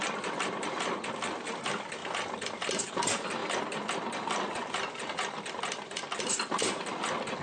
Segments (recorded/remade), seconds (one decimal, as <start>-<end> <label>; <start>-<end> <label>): 0.0-7.4 recorded